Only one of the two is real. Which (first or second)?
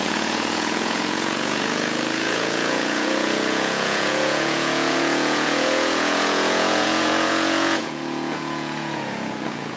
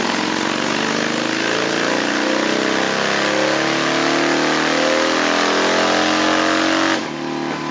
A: second